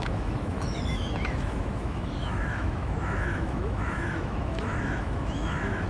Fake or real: fake